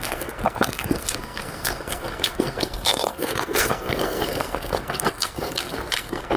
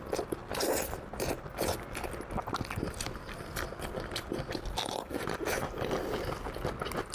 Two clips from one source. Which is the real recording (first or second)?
second